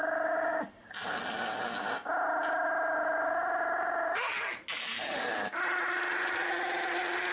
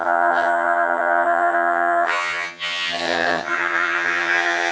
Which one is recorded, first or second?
first